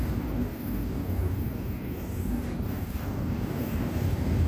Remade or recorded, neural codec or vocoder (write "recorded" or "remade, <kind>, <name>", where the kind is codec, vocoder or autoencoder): remade, codec, DAC